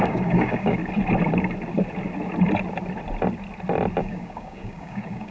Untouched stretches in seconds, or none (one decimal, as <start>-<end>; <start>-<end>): 0.8-4.0